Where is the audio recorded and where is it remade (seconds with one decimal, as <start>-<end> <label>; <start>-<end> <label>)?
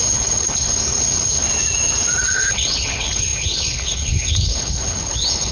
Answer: 0.0-1.4 remade; 1.4-2.3 recorded; 2.3-5.5 remade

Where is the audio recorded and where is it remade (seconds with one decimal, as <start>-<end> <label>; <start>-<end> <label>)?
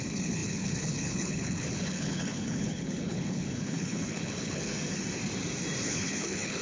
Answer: 0.0-4.7 remade; 4.7-5.8 recorded; 5.8-6.6 remade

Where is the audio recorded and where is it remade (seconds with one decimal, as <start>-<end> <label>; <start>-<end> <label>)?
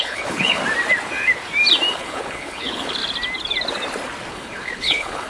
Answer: 0.0-0.6 remade; 0.6-1.9 recorded; 1.9-3.0 remade; 3.0-4.3 recorded; 4.3-5.3 remade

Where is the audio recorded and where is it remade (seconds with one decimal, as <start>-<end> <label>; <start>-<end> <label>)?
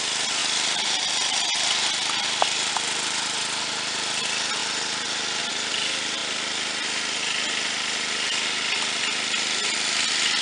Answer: 0.0-10.4 recorded